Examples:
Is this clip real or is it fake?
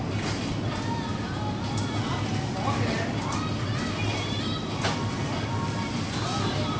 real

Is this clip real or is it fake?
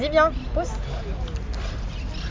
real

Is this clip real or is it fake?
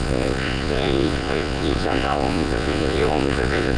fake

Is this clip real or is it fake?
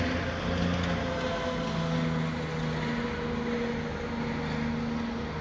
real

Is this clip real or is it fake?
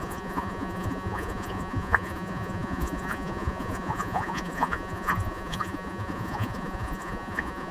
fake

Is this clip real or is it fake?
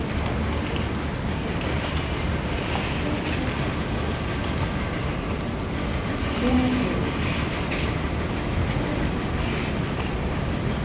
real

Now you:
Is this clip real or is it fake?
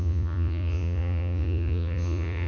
fake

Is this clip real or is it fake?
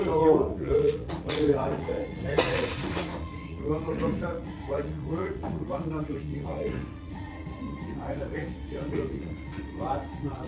fake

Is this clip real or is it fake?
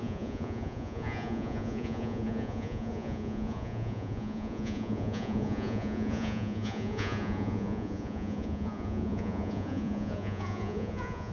fake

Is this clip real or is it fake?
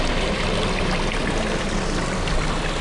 real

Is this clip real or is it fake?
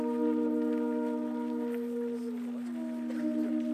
real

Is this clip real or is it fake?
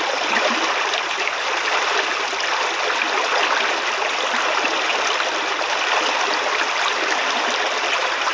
real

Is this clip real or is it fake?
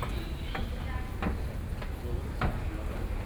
real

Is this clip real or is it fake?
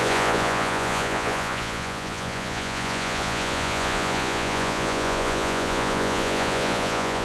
fake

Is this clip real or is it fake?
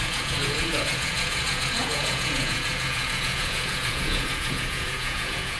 fake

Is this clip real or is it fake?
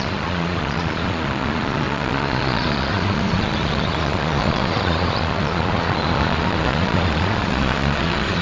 fake